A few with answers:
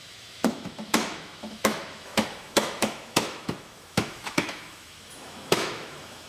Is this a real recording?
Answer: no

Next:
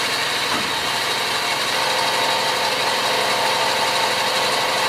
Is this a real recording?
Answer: yes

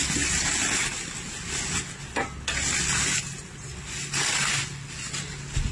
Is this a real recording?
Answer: yes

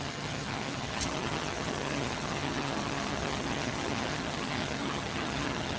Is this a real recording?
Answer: no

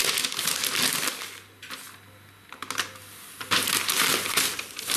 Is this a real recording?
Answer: yes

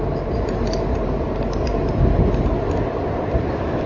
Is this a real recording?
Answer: yes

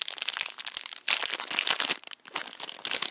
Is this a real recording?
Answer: yes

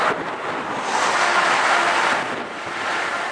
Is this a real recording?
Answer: yes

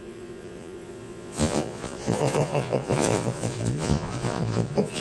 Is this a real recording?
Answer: no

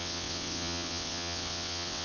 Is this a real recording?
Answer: no